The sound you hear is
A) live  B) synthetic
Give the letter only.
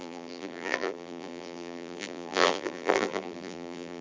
B